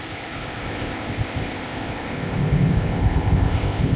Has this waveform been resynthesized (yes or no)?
yes